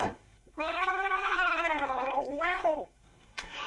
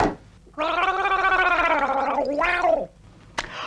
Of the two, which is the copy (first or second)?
first